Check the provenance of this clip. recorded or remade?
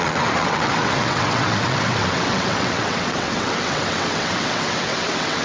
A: remade